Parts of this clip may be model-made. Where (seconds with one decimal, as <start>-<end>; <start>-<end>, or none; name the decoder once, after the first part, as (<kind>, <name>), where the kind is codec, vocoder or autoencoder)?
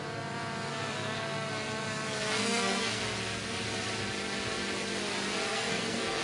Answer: 0.7-3.0 (codec, SNAC); 5.5-6.2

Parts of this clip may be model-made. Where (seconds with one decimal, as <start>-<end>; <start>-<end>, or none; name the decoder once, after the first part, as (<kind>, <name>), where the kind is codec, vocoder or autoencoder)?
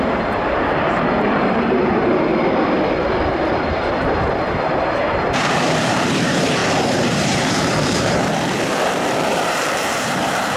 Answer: 0.0-2.3 (vocoder, BigVGAN v2); 3.3-6.6; 7.1-10.6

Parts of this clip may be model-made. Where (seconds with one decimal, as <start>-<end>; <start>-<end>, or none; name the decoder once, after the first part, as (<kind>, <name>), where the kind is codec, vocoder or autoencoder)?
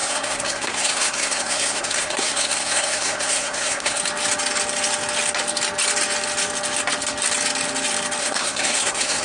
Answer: 0.0-4.0 (codec, SNAC); 8.2-9.2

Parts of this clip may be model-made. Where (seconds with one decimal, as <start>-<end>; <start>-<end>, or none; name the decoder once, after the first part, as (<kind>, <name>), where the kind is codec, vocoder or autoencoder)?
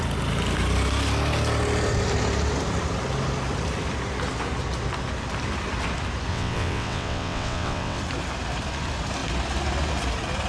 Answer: 6.3-8.0 (vocoder, WaveNeXt)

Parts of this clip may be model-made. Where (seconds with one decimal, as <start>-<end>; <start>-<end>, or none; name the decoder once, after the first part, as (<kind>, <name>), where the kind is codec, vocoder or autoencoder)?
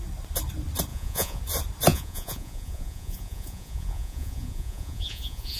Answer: 0.9-1.4 (vocoder, Vocos); 1.9-5.6